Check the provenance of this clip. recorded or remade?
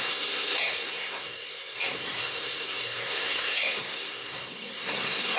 remade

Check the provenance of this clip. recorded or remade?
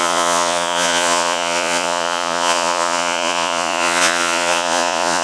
remade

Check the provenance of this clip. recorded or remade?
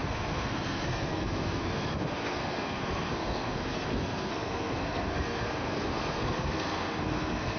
remade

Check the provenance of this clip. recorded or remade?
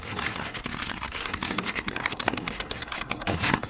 remade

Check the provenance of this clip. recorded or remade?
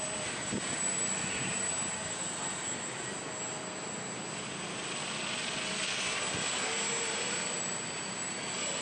recorded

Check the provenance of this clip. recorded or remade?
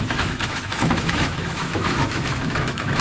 remade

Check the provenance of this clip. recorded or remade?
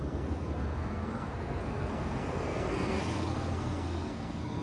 remade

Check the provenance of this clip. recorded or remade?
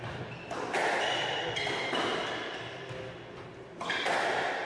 recorded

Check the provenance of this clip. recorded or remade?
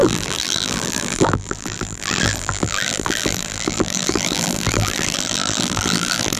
remade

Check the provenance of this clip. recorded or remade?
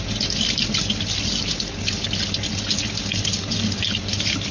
recorded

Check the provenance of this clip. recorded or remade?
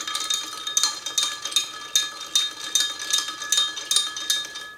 recorded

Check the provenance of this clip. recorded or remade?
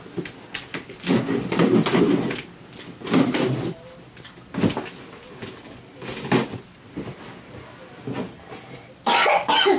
recorded